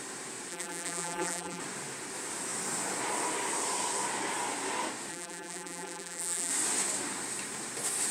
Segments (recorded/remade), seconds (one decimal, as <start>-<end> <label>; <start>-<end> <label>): 0.0-0.5 recorded; 0.5-1.6 remade; 1.6-5.1 recorded; 5.1-6.5 remade; 6.5-8.1 recorded